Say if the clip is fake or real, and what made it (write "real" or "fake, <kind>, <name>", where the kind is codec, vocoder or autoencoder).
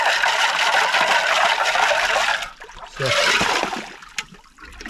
real